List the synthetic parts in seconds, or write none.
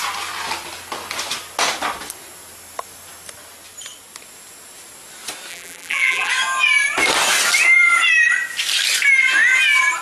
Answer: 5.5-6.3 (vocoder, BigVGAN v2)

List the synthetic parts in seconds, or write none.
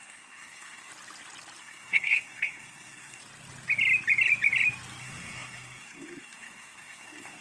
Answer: 0.0-0.9 (codec, SNAC); 1.6-3.2; 5.0-7.4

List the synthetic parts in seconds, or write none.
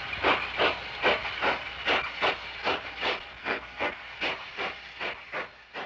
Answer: 3.4-4.0 (codec, SNAC)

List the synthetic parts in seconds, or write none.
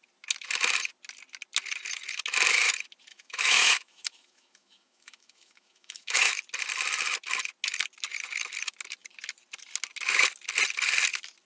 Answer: 3.1-6.4 (autoencoder, DAC-VAE)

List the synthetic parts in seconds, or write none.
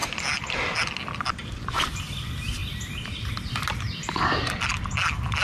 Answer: 0.0-2.0 (vocoder, BigVGAN v2); 2.6-3.5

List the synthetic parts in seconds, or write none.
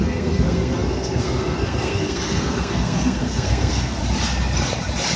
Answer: 0.0-4.0 (codec, SNAC)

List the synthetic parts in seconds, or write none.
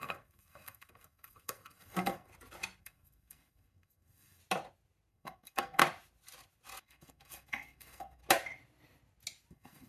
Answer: 0.0-2.3 (codec, SNAC); 2.8-4.4; 5.1-5.8; 6.8-8.2; 9.5-9.9